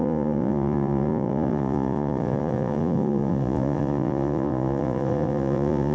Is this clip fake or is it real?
fake